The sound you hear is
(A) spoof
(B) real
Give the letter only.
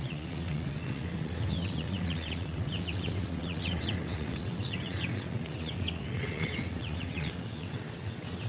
A